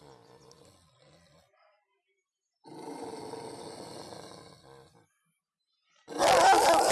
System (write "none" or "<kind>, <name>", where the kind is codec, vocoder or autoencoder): none